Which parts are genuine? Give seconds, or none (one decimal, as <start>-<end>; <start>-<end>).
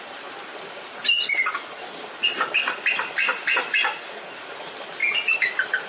1.0-4.5; 5.0-5.5